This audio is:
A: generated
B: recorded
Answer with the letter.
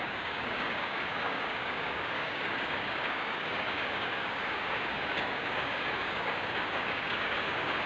A